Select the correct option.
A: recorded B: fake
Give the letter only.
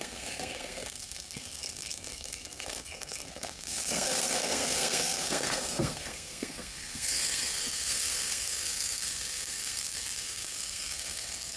B